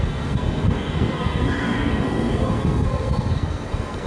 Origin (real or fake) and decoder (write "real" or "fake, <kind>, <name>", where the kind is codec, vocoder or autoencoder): fake, codec, SNAC